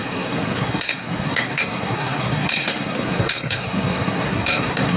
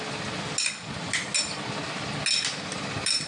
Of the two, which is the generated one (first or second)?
first